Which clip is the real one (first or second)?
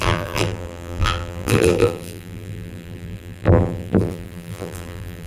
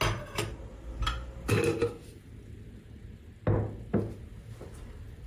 second